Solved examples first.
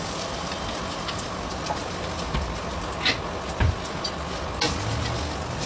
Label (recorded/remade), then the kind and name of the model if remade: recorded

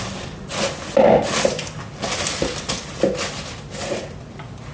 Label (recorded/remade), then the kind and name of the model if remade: recorded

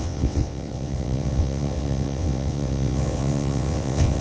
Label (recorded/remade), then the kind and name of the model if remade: remade, vocoder, WaveNeXt